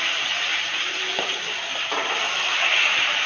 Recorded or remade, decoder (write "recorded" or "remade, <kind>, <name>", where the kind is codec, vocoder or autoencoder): remade, vocoder, BigVGAN v2